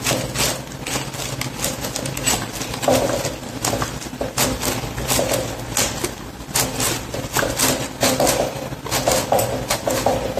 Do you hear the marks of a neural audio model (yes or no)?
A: no